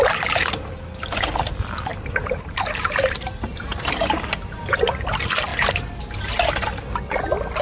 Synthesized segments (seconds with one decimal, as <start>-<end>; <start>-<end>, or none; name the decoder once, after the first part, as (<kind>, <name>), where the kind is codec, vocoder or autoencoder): 1.9-4.6 (vocoder, BigVGAN v2); 5.5-6.0